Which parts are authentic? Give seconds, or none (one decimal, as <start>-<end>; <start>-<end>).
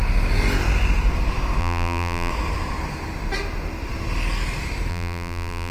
0.0-1.6; 2.3-4.9